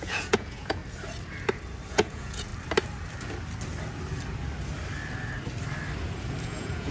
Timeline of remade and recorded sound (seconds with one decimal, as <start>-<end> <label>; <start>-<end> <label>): 0.0-0.8 remade; 0.8-1.9 recorded; 1.9-2.5 remade; 2.5-6.4 recorded; 6.4-6.9 remade